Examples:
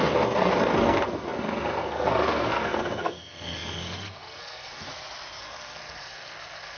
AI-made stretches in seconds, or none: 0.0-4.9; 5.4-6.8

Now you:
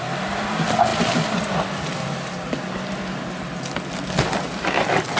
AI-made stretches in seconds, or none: none